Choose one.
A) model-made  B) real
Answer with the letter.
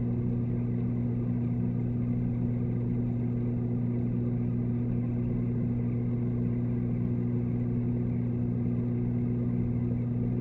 B